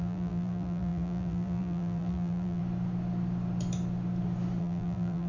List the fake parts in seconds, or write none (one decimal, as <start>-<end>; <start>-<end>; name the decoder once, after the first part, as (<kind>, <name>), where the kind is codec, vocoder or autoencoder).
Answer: 0.0-2.6 (vocoder, BigVGAN v2); 4.6-5.3